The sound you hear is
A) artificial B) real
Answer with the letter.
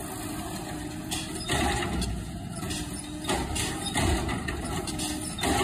B